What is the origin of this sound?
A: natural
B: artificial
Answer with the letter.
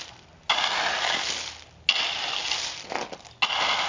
A